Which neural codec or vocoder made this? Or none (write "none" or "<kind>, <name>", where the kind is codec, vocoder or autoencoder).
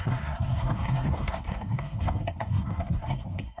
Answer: codec, SNAC